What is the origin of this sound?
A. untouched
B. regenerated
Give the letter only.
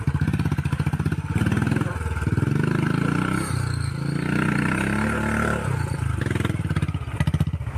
A